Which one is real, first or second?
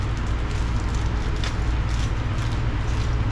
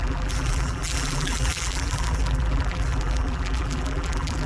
first